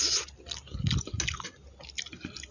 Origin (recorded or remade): recorded